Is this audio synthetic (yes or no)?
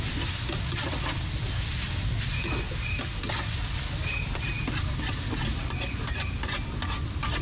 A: no